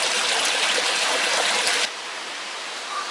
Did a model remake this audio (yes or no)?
no